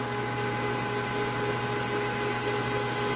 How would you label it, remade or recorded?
recorded